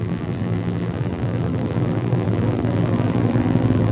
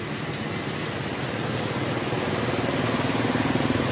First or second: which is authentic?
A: second